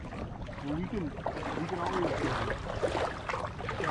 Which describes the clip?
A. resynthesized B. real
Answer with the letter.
B